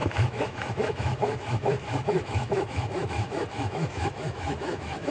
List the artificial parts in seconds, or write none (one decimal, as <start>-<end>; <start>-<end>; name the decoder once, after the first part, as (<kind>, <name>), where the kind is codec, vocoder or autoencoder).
0.0-5.1 (autoencoder, DAC-VAE)